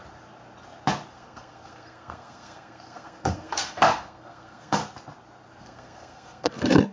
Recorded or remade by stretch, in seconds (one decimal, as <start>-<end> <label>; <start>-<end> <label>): 0.0-1.1 recorded; 1.1-4.8 remade; 4.8-5.6 recorded; 5.6-6.9 remade